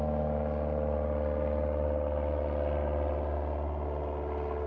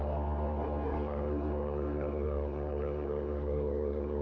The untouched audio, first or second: first